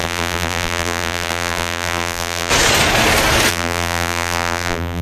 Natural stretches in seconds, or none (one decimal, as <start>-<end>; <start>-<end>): 2.5-3.5